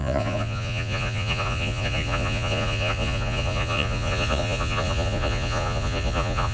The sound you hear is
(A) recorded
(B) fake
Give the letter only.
B